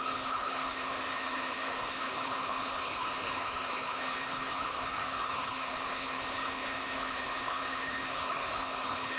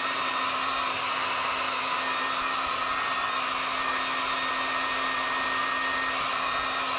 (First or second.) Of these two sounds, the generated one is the first